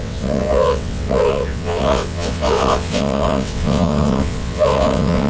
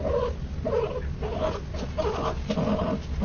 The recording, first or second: second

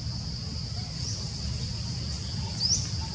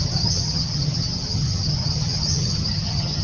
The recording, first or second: first